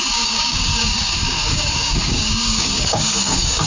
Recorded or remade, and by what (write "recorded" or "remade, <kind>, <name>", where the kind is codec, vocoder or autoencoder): remade, codec, DAC